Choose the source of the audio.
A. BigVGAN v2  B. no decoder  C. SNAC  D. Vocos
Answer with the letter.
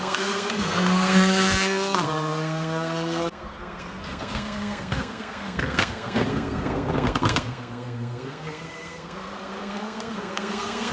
C